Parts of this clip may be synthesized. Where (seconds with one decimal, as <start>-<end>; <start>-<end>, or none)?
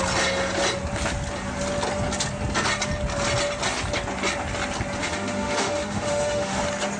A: 5.0-6.6